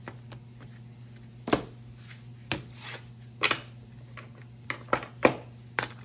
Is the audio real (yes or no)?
yes